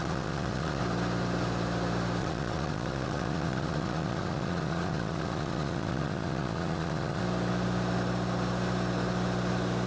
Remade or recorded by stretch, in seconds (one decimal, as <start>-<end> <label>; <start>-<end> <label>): 0.0-0.8 remade; 0.8-2.2 recorded; 2.2-7.2 remade; 7.2-9.9 recorded